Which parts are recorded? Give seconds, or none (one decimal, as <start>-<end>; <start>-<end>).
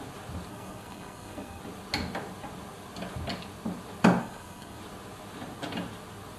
0.0-0.5; 1.6-4.2; 4.8-6.4